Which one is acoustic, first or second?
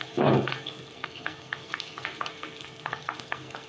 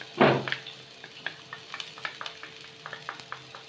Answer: second